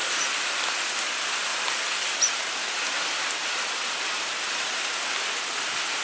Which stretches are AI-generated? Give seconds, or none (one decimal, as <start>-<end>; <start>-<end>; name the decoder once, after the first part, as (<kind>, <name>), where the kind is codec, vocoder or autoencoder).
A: 0.0-0.7 (vocoder, BigVGAN v2); 1.5-5.1